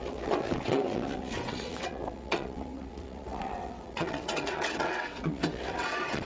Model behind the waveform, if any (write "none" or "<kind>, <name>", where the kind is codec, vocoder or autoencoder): vocoder, WaveNeXt